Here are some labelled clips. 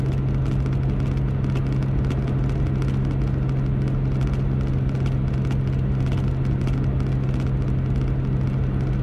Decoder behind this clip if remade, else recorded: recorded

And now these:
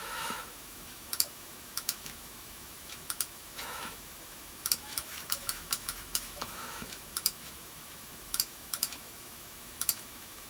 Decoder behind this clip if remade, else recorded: remade, autoencoder, DAC-VAE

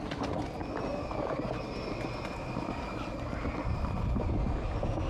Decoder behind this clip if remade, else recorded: recorded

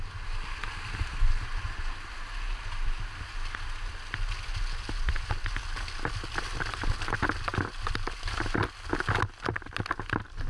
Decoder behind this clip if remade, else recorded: recorded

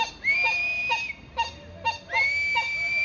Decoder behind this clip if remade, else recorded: recorded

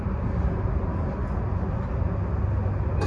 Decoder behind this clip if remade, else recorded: recorded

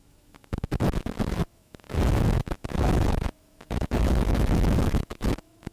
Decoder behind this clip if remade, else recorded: remade, autoencoder, DAC-VAE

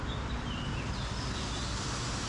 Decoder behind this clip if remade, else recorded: recorded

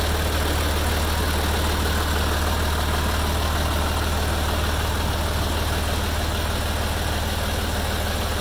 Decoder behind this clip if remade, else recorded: recorded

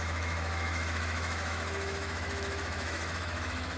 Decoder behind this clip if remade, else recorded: remade, autoencoder, DAC-VAE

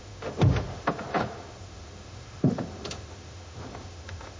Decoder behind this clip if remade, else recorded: remade, autoencoder, DAC-VAE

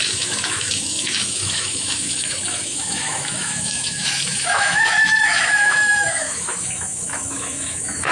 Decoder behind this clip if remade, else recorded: remade, autoencoder, DAC-VAE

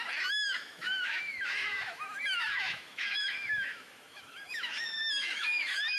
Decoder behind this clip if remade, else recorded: remade, autoencoder, DAC-VAE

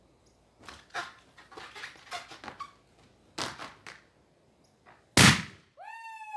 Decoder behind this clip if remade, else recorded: recorded